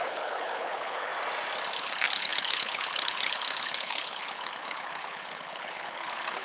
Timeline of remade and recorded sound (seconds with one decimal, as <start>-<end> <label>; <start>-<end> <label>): 0.0-1.1 remade; 1.1-1.8 recorded; 1.8-6.4 remade